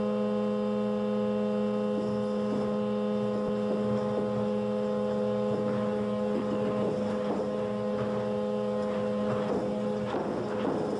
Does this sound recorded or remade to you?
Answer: recorded